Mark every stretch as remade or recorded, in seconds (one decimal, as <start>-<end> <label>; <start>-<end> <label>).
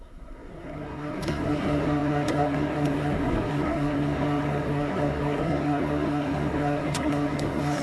0.0-7.8 remade